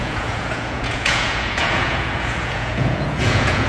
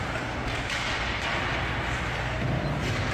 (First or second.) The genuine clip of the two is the second